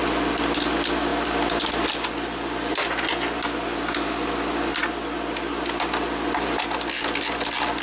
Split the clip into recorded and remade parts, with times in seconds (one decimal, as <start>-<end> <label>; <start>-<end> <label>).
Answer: 0.0-7.8 recorded